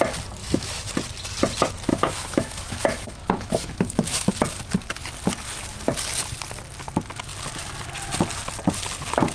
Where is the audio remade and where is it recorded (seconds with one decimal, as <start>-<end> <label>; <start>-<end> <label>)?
0.0-0.4 recorded; 0.4-0.9 remade; 0.9-1.9 recorded; 1.9-4.3 remade; 4.3-9.3 recorded